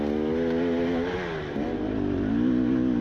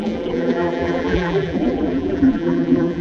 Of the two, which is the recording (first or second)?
first